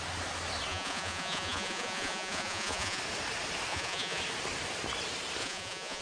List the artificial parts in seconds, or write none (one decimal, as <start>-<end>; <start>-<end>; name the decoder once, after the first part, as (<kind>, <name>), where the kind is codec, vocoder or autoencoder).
0.7-3.0 (vocoder, Vocos); 3.7-4.2; 5.4-6.0